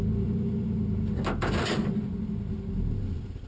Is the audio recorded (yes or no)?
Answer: yes